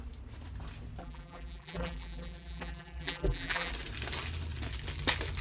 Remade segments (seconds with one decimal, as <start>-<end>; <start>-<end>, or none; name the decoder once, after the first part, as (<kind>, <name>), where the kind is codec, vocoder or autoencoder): 1.0-3.7 (vocoder, BigVGAN v2)